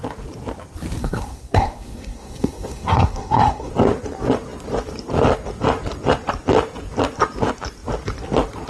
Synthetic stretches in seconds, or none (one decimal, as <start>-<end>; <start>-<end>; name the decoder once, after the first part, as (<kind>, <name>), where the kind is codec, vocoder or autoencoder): 1.0-3.7 (codec, SNAC)